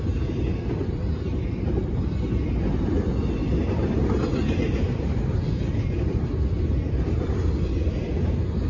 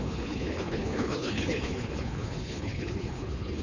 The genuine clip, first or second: first